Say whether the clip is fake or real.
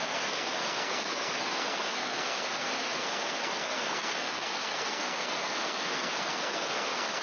fake